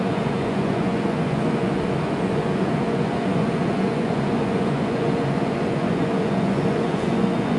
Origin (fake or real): fake